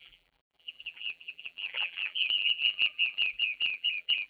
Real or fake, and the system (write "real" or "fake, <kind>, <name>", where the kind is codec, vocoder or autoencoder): fake, vocoder, BigVGAN v2